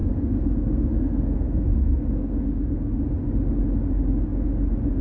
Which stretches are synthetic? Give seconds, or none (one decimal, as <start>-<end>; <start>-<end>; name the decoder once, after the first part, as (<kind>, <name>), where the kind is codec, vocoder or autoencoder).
0.0-3.0 (codec, SNAC)